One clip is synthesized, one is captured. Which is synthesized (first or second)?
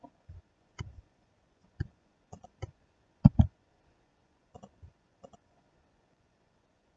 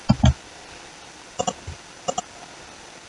first